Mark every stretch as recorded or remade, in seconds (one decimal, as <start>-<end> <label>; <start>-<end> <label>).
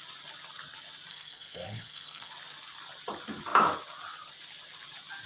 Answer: 0.0-1.1 recorded; 1.1-2.3 remade; 2.3-5.3 recorded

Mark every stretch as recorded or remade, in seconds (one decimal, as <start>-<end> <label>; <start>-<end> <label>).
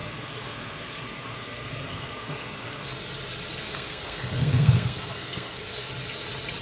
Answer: 0.0-2.9 remade; 2.9-3.6 recorded; 3.6-5.9 remade; 5.9-6.6 recorded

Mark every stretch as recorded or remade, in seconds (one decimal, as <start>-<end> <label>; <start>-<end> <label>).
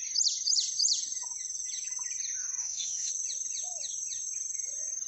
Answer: 0.0-2.6 recorded; 2.6-3.1 remade; 3.1-5.1 recorded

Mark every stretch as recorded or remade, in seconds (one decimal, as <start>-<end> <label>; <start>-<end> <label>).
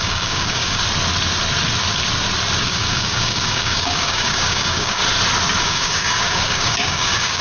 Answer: 0.0-0.8 remade; 0.8-2.6 recorded; 2.6-5.0 remade; 5.0-5.6 recorded; 5.6-7.4 remade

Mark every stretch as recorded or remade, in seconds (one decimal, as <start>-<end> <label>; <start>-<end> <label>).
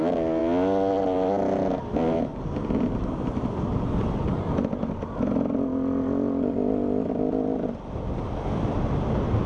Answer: 0.0-9.5 recorded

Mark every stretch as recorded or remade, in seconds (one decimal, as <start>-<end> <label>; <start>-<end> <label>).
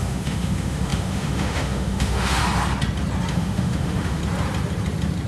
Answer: 0.0-2.4 remade; 2.4-3.3 recorded; 3.3-4.2 remade; 4.2-5.3 recorded